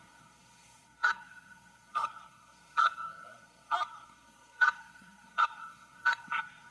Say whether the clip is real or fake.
fake